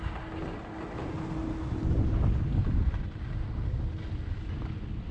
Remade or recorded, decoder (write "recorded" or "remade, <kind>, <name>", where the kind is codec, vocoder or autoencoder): recorded